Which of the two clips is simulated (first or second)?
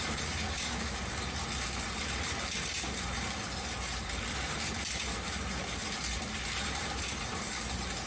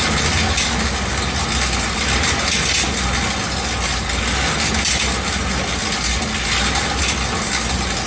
first